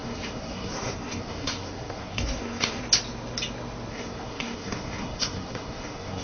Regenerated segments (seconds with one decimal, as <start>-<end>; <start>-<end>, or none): 0.0-2.8; 3.9-6.2